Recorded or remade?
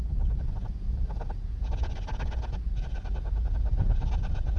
remade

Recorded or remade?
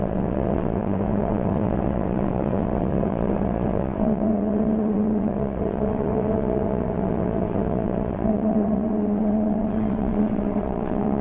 remade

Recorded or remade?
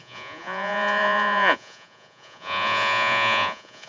remade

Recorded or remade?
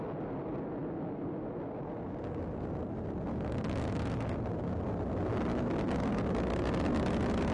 recorded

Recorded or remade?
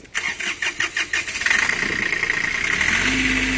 recorded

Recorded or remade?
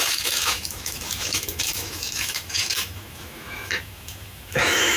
remade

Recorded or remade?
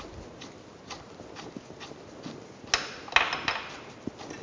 recorded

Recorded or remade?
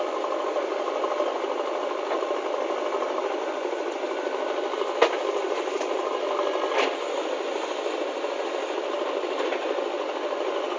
recorded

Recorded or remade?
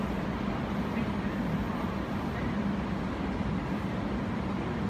recorded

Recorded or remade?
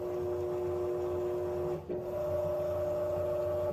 recorded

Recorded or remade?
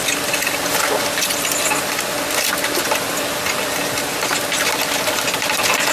recorded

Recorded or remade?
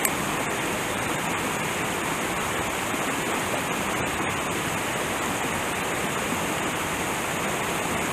recorded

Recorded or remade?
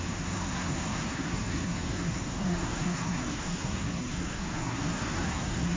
remade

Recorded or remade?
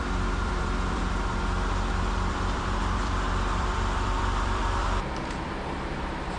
remade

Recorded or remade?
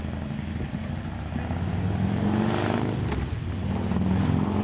recorded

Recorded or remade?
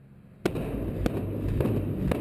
recorded